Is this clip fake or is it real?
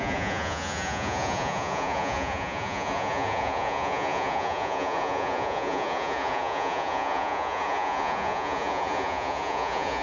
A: fake